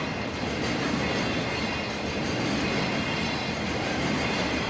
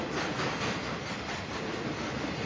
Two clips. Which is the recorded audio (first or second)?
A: first